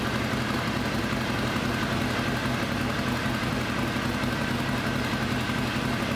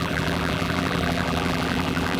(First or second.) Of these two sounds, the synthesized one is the second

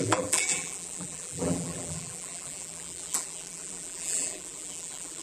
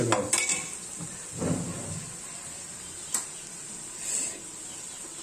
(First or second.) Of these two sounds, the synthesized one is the first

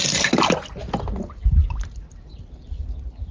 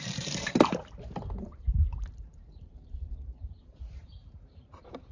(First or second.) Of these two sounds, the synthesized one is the second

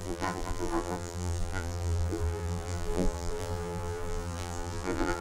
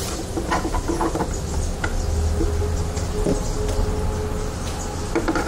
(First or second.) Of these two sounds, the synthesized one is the first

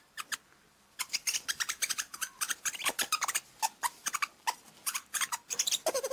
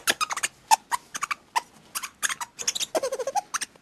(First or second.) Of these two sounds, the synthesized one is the first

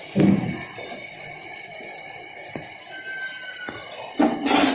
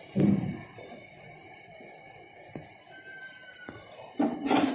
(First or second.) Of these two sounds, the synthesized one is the second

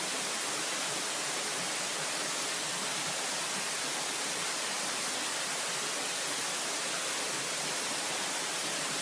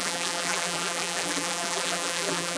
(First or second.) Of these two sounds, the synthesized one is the second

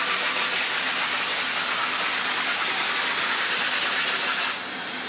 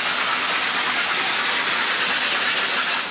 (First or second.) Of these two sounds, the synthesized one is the first